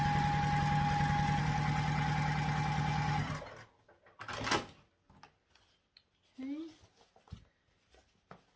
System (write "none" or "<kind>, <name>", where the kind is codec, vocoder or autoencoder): none